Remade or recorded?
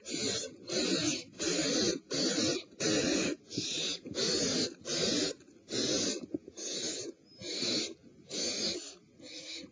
recorded